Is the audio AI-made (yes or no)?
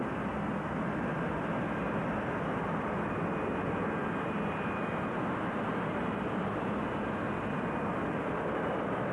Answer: no